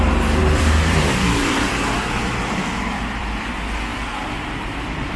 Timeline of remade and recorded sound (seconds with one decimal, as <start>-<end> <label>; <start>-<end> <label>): 0.0-0.4 recorded; 0.4-3.5 remade; 3.5-5.2 recorded